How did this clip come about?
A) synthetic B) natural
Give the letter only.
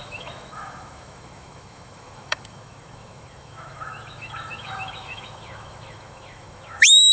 A